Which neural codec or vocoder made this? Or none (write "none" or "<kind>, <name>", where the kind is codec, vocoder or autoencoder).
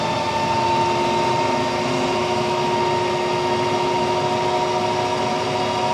none